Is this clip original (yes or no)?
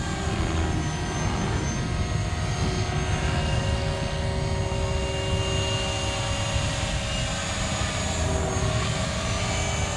yes